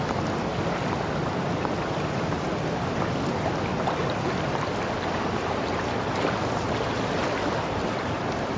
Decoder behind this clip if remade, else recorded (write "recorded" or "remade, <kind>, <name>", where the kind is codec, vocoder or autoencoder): recorded